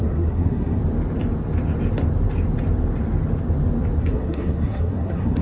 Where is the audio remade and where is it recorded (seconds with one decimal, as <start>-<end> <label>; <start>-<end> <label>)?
0.0-0.8 remade; 0.8-4.0 recorded; 4.0-5.4 remade